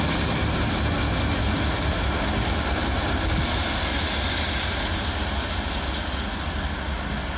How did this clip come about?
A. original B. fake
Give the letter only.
A